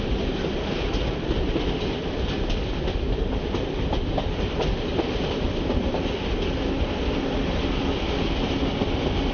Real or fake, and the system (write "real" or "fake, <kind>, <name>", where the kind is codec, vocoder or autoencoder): real